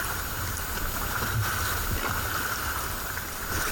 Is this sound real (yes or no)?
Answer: yes